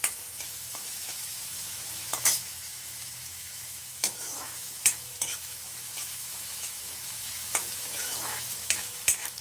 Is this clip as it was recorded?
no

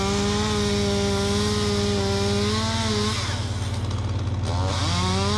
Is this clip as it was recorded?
yes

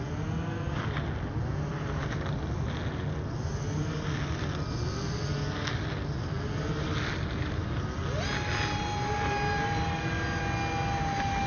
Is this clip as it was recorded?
yes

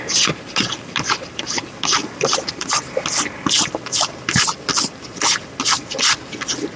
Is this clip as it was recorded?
yes